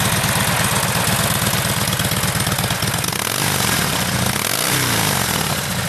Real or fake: real